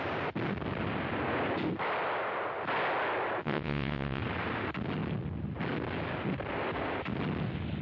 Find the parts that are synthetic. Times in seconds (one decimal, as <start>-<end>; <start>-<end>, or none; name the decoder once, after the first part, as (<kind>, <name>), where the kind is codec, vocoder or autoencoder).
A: 3.4-4.2 (vocoder, WaveNeXt)